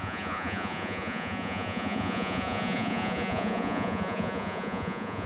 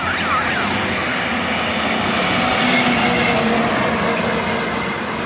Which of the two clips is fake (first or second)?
first